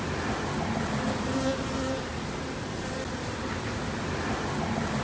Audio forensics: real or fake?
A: real